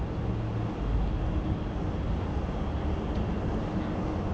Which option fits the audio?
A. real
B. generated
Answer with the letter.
A